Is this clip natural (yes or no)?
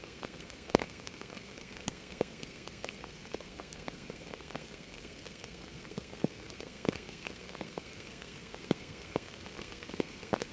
no